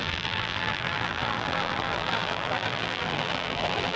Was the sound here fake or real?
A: fake